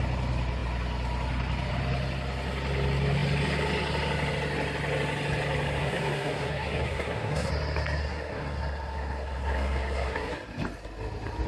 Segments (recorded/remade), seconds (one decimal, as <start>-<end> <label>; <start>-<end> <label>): 0.0-5.8 recorded; 5.8-7.5 remade; 7.5-8.0 recorded; 8.0-10.3 remade; 10.3-11.5 recorded